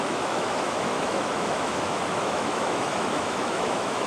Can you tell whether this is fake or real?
fake